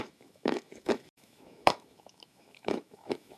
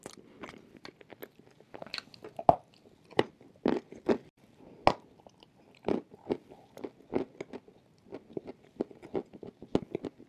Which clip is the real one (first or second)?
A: second